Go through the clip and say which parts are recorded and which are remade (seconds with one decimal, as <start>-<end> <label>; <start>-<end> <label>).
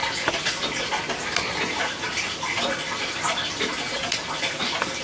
0.0-5.0 recorded